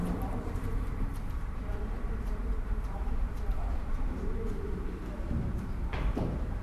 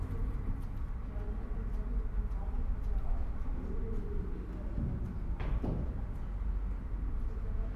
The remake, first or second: first